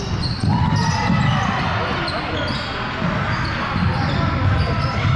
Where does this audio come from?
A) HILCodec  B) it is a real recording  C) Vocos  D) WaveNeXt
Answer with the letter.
B